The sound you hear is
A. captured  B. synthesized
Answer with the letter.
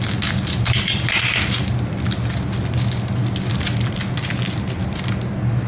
A